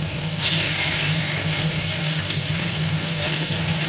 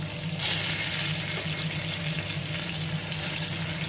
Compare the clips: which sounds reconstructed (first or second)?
first